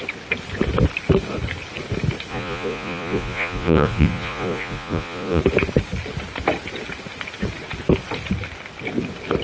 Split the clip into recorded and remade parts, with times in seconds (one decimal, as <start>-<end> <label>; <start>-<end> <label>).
0.0-2.3 recorded; 2.3-5.4 remade; 5.4-9.4 recorded